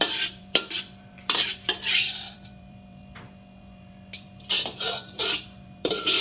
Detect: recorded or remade remade